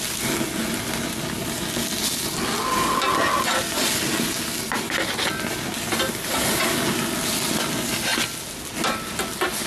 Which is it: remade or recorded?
recorded